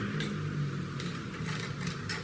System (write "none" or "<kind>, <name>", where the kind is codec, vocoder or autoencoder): none